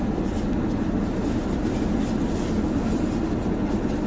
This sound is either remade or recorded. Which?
recorded